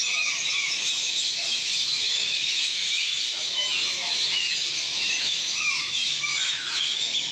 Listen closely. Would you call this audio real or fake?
fake